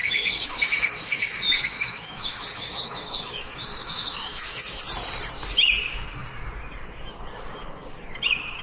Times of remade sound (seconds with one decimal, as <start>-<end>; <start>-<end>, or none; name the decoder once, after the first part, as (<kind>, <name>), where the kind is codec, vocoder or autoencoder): 0.0-4.8 (autoencoder, DAC-VAE)